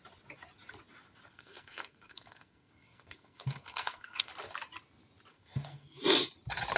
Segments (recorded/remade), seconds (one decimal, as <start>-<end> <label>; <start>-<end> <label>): 0.0-1.3 recorded; 1.3-4.3 remade; 4.3-5.3 recorded; 5.3-6.0 remade; 6.0-6.8 recorded

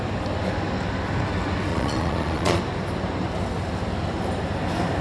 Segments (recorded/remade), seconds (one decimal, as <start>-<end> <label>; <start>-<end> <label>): 0.0-1.7 recorded; 1.7-2.6 remade; 2.6-5.0 recorded

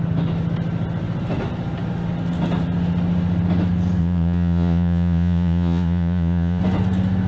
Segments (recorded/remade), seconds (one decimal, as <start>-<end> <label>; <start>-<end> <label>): 0.0-4.0 recorded; 4.0-6.6 remade; 6.6-7.3 recorded

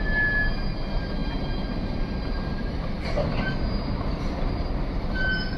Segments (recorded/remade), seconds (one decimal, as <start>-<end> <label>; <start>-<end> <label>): 0.0-5.6 recorded

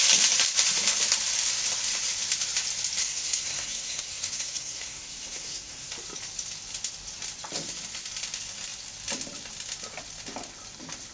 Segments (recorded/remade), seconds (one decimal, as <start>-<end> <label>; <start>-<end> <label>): 0.0-3.0 recorded; 3.0-5.9 remade; 5.9-11.1 recorded

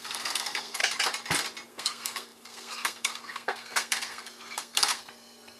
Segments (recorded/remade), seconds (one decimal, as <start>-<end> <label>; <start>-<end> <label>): 0.0-0.8 remade; 0.8-1.7 recorded; 1.7-5.6 remade

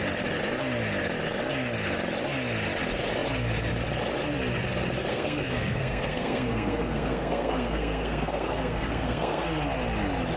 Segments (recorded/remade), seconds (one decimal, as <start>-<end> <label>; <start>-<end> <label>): 0.0-5.1 recorded; 5.1-9.4 remade; 9.4-10.4 recorded